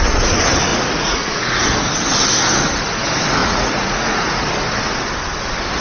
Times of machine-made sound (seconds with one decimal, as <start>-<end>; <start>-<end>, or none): 0.7-1.6; 3.4-4.4